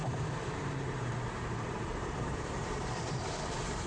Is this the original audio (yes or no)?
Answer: no